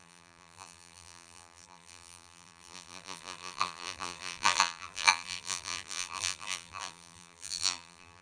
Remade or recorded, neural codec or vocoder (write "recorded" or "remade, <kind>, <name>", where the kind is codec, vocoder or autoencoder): remade, vocoder, BigVGAN v2